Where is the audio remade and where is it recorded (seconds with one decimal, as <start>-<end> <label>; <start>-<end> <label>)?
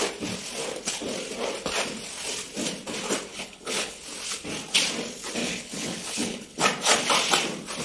0.0-3.3 recorded; 3.3-4.0 remade; 4.0-5.4 recorded; 5.4-6.6 remade; 6.6-7.8 recorded